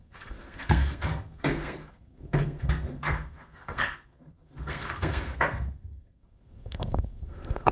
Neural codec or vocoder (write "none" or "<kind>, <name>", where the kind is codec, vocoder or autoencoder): codec, SNAC